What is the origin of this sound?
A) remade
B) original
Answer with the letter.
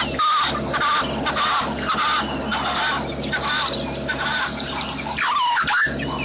B